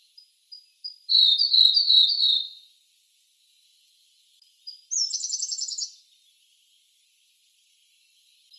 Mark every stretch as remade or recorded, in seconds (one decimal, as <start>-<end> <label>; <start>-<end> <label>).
0.0-8.6 recorded